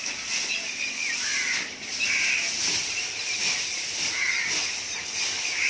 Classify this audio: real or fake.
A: real